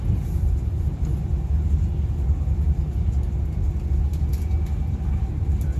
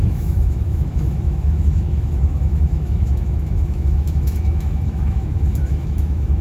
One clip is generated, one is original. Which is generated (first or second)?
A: second